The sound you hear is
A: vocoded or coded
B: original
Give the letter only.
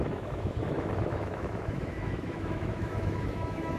A